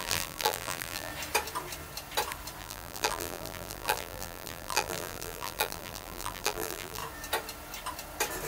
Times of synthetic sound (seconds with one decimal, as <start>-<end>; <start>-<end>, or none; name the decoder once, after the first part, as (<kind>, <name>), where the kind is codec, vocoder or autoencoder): 0.0-1.1 (vocoder, BigVGAN v2); 2.6-7.0